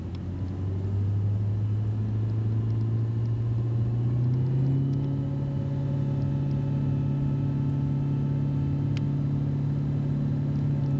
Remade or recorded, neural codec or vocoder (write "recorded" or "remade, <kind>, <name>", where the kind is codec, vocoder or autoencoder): recorded